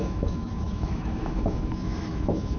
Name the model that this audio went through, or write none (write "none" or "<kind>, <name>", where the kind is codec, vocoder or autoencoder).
autoencoder, DAC-VAE